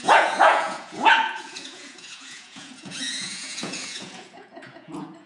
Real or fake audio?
fake